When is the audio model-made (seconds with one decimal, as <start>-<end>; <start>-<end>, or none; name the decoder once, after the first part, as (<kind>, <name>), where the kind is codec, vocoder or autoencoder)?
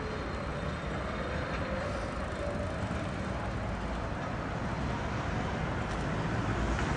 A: none